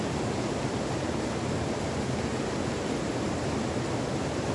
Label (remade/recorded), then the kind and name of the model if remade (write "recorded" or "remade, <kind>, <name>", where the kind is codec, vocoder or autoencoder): recorded